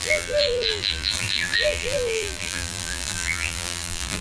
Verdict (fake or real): fake